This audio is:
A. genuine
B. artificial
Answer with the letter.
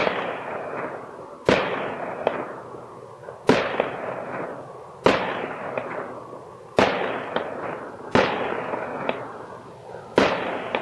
A